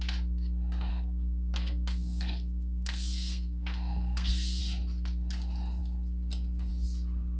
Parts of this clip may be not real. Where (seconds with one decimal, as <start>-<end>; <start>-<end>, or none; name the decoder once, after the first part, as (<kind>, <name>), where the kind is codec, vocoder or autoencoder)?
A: 0.9-4.6 (codec, SNAC)